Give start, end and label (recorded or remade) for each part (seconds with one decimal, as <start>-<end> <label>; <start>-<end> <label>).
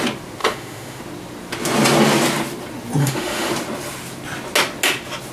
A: 0.0-0.4 recorded; 0.4-1.0 remade; 1.0-3.0 recorded; 3.0-3.5 remade; 3.5-5.3 recorded